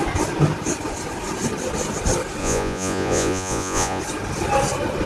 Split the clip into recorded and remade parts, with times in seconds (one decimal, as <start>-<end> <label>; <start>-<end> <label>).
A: 0.0-2.4 recorded; 2.4-4.0 remade; 4.0-5.1 recorded